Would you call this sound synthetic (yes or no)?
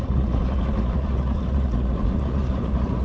yes